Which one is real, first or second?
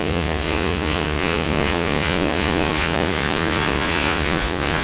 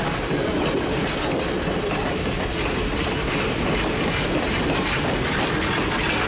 second